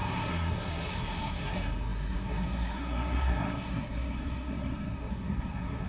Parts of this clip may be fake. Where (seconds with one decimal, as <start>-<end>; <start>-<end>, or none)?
0.0-5.9